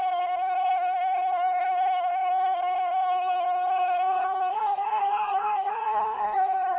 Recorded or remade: remade